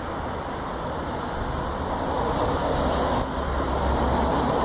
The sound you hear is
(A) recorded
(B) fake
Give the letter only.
A